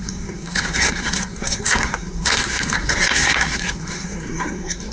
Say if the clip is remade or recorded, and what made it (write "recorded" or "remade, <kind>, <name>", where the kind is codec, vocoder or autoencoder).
remade, codec, SNAC